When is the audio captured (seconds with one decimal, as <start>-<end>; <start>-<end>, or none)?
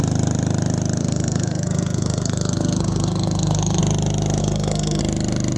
0.0-1.0; 3.8-4.4; 5.0-5.6